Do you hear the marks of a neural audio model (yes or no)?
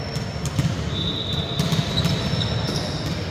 no